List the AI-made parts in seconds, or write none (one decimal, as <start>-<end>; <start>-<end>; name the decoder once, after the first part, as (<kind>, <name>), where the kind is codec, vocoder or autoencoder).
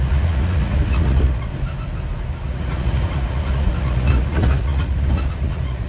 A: 0.0-1.5 (vocoder, Vocos); 2.4-5.9